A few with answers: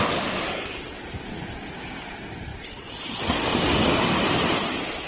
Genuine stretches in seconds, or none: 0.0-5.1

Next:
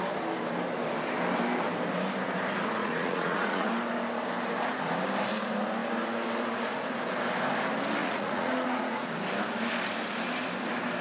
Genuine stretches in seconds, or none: 0.0-2.8; 3.7-8.0; 9.1-11.0

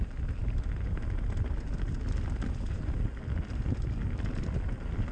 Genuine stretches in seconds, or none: 0.0-5.1

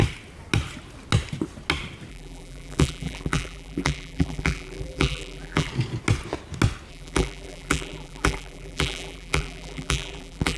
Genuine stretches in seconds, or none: 0.0-2.1; 5.7-6.9

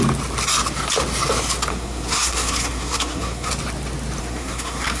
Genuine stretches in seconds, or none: 0.0-1.7; 3.5-4.2

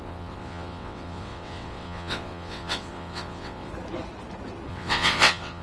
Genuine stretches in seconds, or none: 3.7-4.7

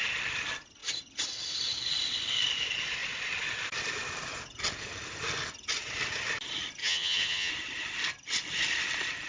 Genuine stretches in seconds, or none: 0.0-6.8; 7.5-9.3